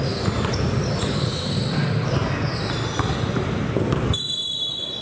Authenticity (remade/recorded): recorded